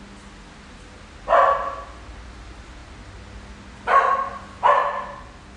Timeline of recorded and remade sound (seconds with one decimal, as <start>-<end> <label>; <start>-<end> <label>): 0.0-5.6 recorded